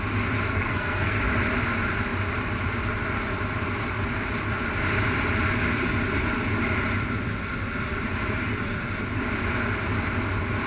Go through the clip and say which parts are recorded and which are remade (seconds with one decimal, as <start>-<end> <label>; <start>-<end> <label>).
0.0-0.5 recorded; 0.5-1.2 remade; 1.2-10.7 recorded